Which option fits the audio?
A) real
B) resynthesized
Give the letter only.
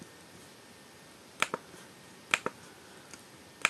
A